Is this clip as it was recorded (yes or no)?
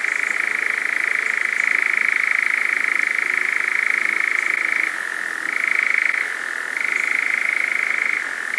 yes